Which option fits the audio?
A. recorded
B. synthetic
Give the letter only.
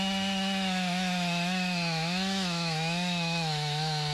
B